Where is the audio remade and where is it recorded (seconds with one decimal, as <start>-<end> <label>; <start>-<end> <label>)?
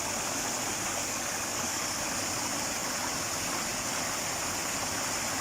0.0-1.0 recorded; 1.0-2.0 remade; 2.0-5.4 recorded